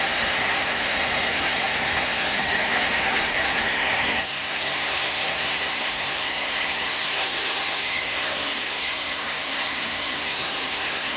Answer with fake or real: fake